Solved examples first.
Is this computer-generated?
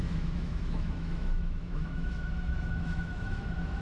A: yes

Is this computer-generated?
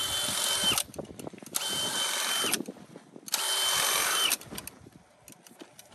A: no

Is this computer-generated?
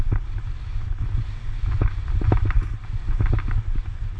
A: no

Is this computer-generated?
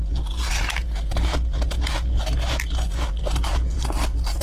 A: no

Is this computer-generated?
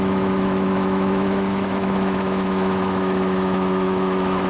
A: yes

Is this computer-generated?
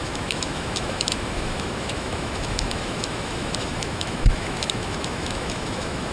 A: yes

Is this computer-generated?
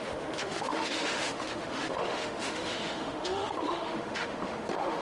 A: yes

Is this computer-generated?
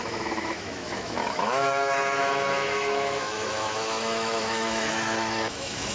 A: yes